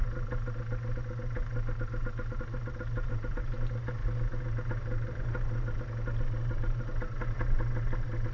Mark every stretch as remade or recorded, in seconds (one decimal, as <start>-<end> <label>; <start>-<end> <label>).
0.0-8.3 recorded